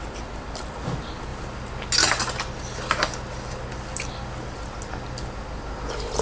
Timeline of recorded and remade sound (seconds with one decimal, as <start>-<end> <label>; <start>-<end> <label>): 0.0-6.2 recorded